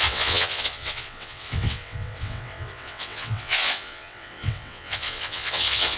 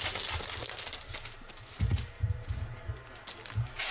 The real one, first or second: second